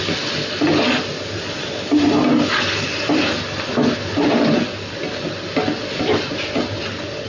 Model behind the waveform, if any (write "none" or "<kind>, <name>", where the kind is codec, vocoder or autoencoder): none